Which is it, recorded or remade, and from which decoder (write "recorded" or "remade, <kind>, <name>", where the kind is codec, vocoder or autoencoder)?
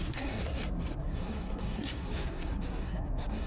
remade, codec, SNAC